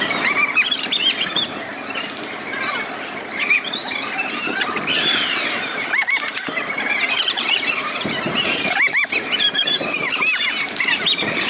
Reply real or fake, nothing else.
fake